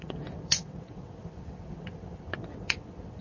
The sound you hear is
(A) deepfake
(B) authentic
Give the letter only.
A